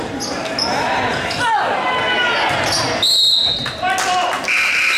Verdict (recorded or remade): recorded